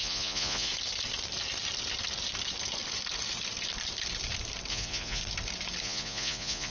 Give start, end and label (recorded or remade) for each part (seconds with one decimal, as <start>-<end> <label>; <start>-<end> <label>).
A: 0.0-0.7 remade; 0.7-4.7 recorded; 4.7-5.2 remade; 5.2-5.8 recorded; 5.8-6.7 remade